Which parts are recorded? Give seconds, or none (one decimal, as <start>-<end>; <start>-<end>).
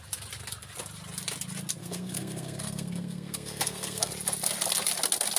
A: 0.0-1.8; 4.1-5.4